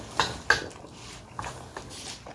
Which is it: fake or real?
real